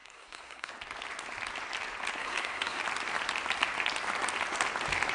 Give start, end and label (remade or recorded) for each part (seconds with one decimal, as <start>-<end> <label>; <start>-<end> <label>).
0.0-0.7 remade; 0.7-2.2 recorded; 2.2-2.8 remade; 2.8-5.1 recorded